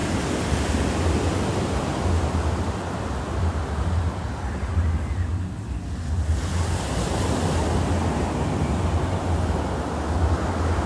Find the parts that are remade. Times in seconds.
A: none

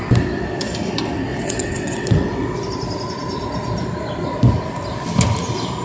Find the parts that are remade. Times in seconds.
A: 1.3-2.6 (vocoder, WaveNeXt)

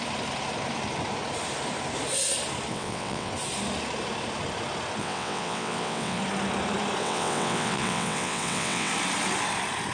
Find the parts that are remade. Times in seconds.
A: 2.7-3.3 (vocoder, WaveNeXt); 5.0-6.2; 7.0-8.9